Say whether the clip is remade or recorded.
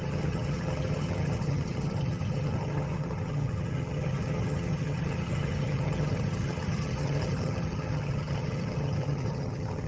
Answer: remade